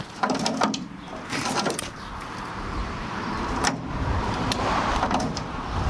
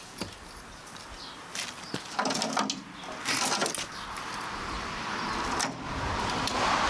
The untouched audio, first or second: second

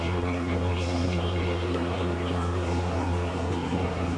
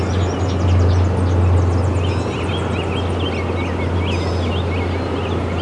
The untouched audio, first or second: second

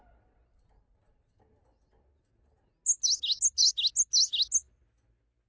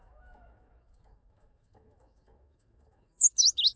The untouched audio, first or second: first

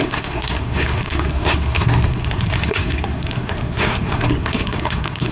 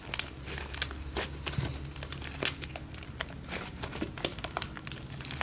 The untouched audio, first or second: second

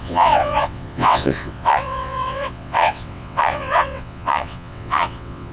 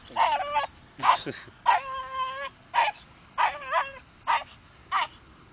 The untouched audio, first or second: second